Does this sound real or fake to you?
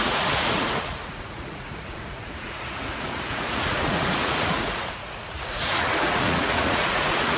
fake